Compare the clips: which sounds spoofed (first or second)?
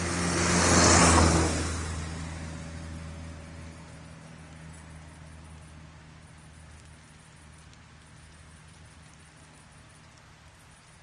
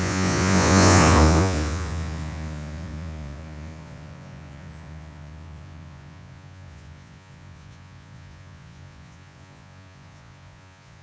second